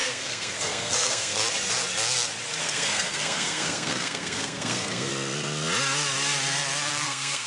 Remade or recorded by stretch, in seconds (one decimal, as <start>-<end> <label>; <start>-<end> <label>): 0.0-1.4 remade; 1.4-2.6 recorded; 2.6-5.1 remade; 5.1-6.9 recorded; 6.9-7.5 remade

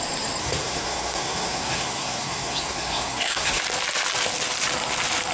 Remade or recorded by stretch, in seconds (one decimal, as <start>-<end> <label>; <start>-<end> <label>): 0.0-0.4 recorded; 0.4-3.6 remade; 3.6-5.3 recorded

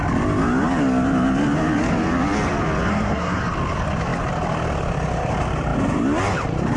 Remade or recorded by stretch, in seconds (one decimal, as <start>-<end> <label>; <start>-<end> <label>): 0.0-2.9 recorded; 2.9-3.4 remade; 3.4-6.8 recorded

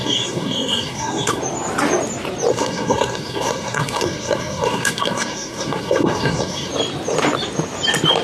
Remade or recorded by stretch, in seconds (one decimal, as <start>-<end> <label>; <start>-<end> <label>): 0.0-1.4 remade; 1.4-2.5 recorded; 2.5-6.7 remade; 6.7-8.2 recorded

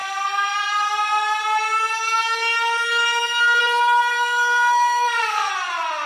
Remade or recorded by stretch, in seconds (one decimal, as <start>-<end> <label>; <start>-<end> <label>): 0.0-0.6 remade; 0.6-4.1 recorded; 4.1-5.5 remade; 5.5-6.1 recorded

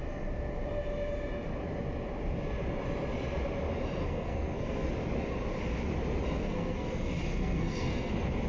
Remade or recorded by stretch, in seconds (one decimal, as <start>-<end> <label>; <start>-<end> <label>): 0.0-4.0 recorded; 4.0-4.9 remade; 4.9-6.4 recorded; 6.4-8.1 remade; 8.1-8.5 recorded